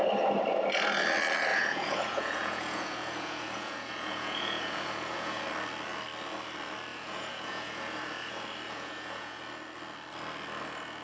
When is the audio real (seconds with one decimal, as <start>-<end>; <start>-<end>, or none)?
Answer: 0.0-1.5; 5.4-6.9; 9.4-11.0